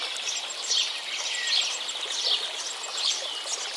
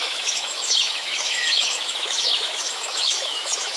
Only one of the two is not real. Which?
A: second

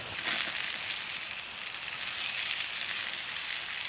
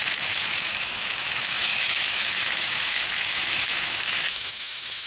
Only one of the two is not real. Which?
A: second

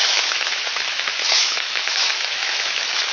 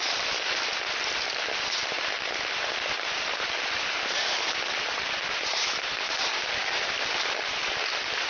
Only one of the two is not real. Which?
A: first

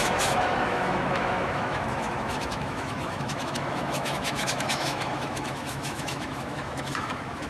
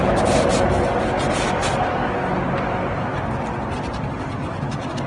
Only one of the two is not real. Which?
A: first